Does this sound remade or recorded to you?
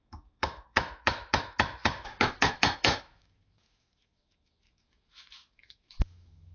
remade